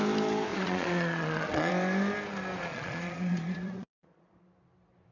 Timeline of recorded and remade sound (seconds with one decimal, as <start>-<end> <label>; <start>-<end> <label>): 0.0-0.5 recorded; 0.5-1.7 remade; 1.7-2.7 recorded; 2.7-4.4 remade; 4.4-5.1 recorded